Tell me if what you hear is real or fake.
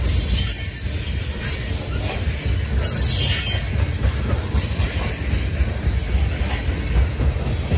real